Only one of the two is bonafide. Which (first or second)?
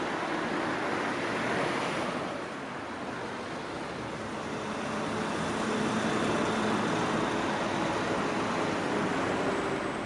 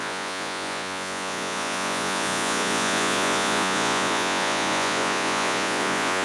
first